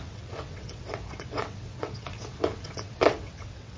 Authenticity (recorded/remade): remade